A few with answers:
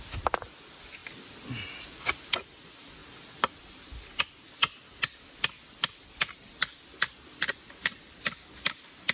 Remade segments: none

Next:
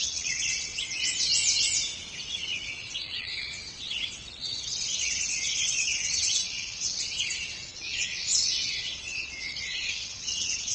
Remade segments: 0.0-1.3 (vocoder, WaveNeXt); 2.2-10.7

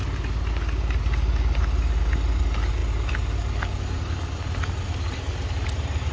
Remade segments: none

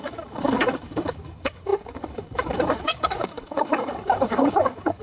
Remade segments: 0.0-5.0 (codec, DAC)

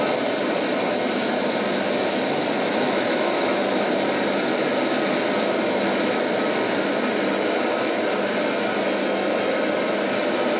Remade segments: 2.7-3.9 (autoencoder, DAC-VAE)

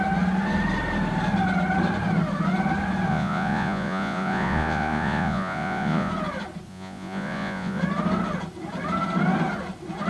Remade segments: 3.1-6.1 (vocoder, Vocos); 6.7-7.8

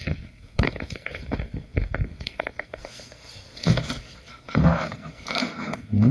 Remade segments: 0.0-6.1 (codec, SNAC)

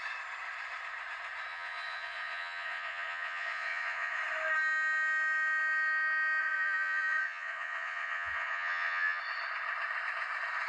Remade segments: 1.5-4.2 (vocoder, Vocos); 6.4-9.2